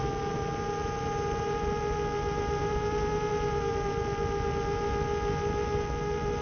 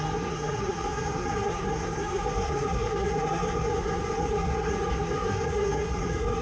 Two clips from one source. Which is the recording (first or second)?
first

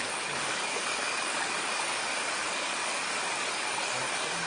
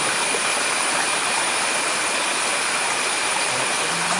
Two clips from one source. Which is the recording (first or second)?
second